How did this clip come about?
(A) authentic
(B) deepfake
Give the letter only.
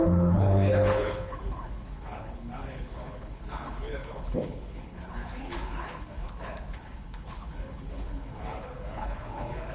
B